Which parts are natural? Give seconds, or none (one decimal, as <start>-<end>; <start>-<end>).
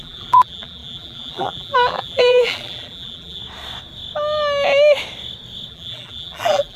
3.4-5.7